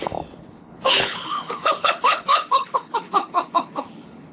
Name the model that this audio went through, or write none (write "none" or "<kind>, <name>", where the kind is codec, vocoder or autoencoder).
codec, HILCodec